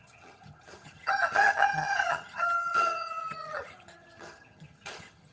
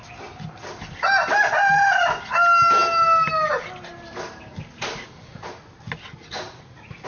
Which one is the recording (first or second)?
second